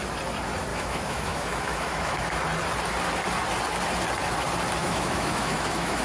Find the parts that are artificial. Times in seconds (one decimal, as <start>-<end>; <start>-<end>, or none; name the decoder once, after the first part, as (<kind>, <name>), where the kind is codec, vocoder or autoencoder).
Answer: 0.7-2.4 (autoencoder, DAC-VAE); 4.8-6.0